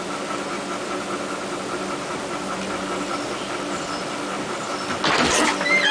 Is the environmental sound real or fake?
real